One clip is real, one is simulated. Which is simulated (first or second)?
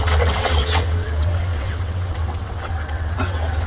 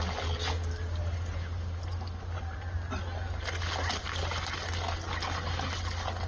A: first